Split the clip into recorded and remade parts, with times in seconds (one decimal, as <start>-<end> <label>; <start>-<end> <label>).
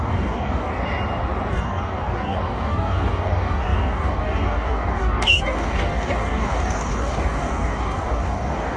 0.0-0.7 remade; 0.7-1.5 recorded; 1.5-8.8 remade